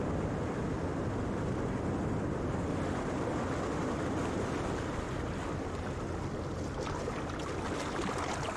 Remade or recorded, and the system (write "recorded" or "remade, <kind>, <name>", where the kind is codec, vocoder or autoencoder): recorded